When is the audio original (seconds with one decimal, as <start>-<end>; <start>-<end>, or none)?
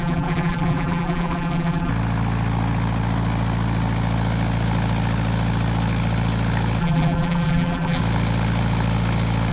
1.9-6.8; 8.0-9.5